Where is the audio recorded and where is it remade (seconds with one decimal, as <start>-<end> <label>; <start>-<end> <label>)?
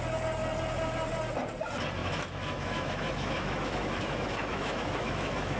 0.0-2.0 recorded; 2.0-5.6 remade